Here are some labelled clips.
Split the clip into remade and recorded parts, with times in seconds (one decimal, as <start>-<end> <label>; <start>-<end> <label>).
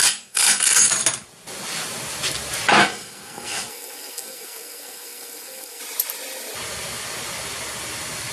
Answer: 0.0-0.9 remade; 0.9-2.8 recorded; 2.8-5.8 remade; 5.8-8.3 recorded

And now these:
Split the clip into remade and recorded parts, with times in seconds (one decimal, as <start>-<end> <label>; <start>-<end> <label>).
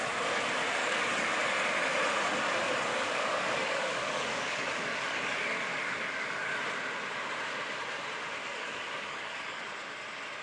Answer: 0.0-0.8 recorded; 0.8-1.3 remade; 1.3-2.9 recorded; 2.9-6.6 remade; 6.6-8.4 recorded; 8.4-9.6 remade; 9.6-10.4 recorded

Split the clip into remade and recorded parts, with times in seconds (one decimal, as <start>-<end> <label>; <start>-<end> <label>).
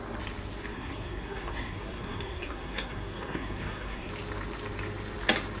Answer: 0.0-0.7 recorded; 0.7-4.1 remade; 4.1-5.6 recorded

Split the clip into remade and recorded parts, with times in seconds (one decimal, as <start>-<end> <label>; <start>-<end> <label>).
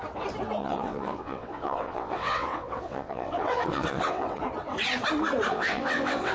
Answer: 0.0-0.6 recorded; 0.6-4.4 remade; 4.4-5.5 recorded; 5.5-6.3 remade